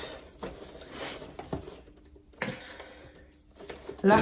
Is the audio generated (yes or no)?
no